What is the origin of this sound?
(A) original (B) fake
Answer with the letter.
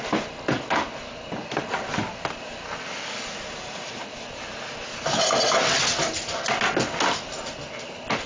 A